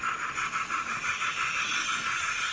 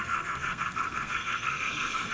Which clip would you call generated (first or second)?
second